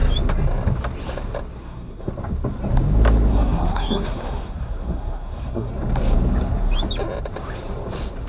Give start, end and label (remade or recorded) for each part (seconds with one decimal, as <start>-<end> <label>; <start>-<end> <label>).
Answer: 0.0-1.6 recorded; 1.6-2.1 remade; 2.1-3.3 recorded; 3.3-5.7 remade; 5.7-8.3 recorded